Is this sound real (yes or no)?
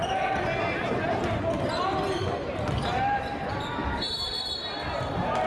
yes